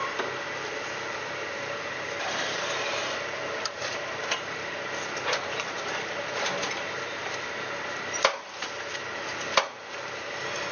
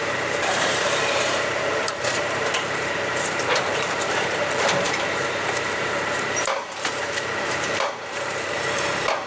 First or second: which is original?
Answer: first